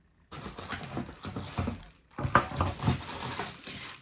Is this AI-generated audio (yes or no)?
yes